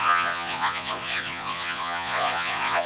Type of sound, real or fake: fake